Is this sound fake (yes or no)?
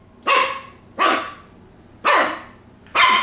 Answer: no